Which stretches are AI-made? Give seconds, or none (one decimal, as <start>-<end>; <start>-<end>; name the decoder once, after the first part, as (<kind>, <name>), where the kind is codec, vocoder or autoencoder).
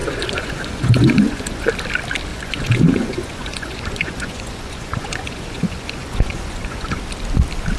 0.0-1.7 (vocoder, Vocos); 2.3-7.0